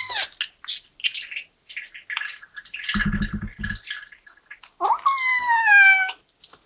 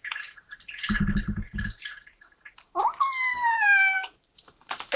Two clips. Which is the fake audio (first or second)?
second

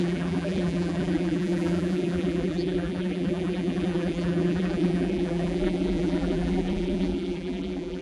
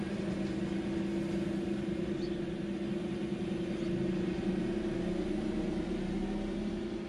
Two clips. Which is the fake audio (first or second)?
first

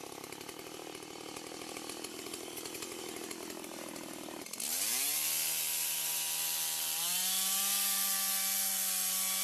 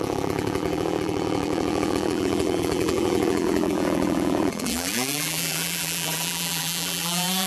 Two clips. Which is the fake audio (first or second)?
second